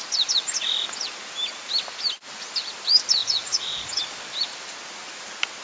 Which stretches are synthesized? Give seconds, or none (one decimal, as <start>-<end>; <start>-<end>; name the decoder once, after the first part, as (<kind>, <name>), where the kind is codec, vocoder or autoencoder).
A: 3.2-4.0 (vocoder, Vocos)